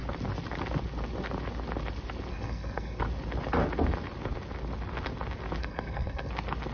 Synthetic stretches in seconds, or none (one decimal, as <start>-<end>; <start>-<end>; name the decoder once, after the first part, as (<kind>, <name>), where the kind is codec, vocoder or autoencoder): 2.3-3.0 (codec, SNAC); 5.6-6.3